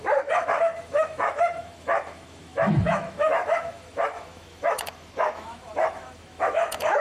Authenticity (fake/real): fake